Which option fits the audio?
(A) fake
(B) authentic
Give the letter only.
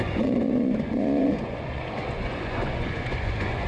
A